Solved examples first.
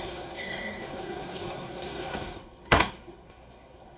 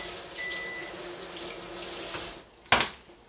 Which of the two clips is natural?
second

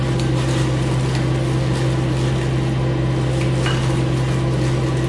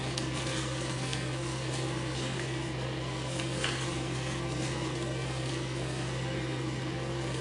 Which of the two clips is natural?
first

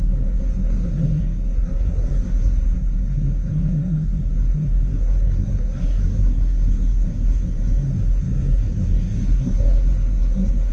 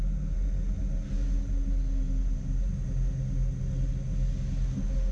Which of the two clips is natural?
second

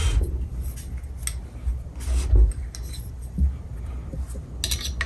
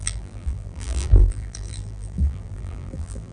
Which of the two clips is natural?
first